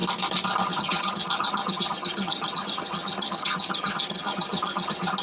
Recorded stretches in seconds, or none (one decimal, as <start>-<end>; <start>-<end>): 0.0-0.7